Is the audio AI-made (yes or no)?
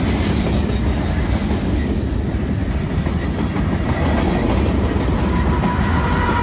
no